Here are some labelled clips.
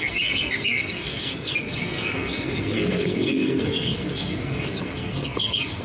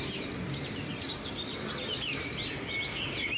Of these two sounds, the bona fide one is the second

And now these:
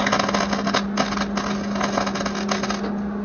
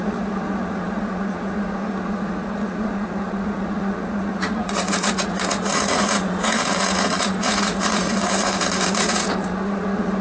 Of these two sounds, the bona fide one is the first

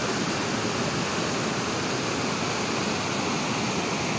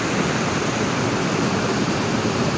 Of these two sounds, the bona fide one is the first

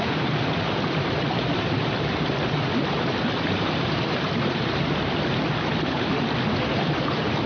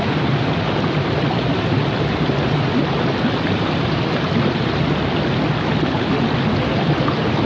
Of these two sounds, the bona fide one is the second